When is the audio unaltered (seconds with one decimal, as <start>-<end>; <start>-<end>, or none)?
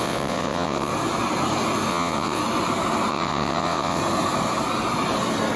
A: 0.9-1.9; 2.4-3.1; 4.0-5.6